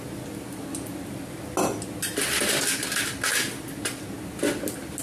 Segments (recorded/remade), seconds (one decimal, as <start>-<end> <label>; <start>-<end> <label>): 0.0-5.0 recorded